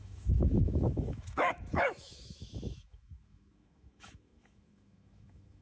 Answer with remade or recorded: remade